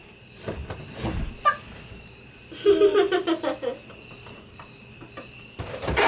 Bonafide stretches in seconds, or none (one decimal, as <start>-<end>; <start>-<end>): 0.6-1.4; 2.4-6.1